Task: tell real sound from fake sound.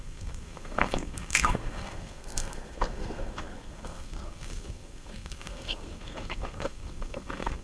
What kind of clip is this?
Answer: fake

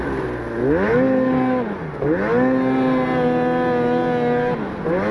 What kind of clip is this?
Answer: real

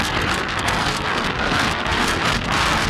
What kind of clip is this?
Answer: fake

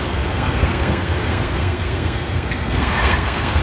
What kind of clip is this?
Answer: fake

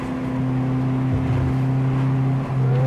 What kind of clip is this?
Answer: real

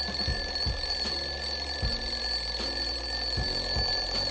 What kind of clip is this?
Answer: real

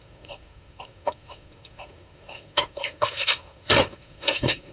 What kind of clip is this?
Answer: fake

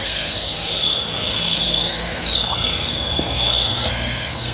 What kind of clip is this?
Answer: fake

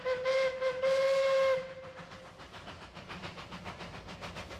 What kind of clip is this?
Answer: real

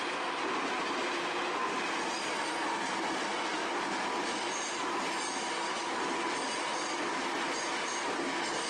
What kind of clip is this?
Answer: real